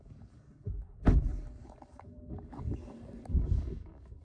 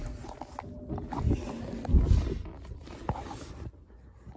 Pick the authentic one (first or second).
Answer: second